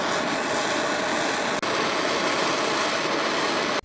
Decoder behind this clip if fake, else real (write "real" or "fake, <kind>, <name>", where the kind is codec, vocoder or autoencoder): real